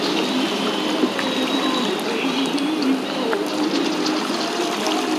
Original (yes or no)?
yes